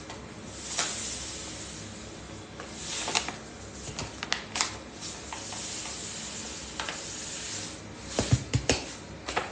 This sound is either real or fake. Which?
real